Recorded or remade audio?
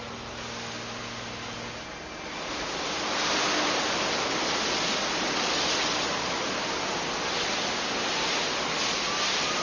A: recorded